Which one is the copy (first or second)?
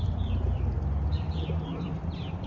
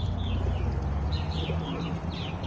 first